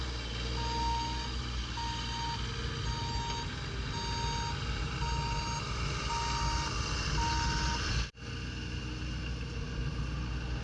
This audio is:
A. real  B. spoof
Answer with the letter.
A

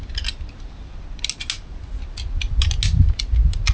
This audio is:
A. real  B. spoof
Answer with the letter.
A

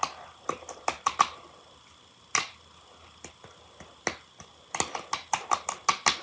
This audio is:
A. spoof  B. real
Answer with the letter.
B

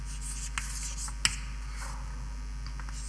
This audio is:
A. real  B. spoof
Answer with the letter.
A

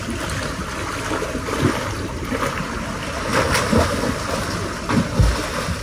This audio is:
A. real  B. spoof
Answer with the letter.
A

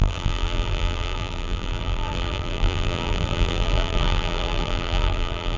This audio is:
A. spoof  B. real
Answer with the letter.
A